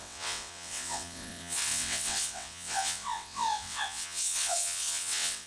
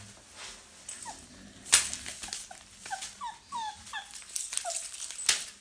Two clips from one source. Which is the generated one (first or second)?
first